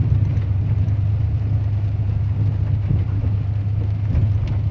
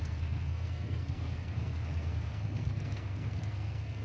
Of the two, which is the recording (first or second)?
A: first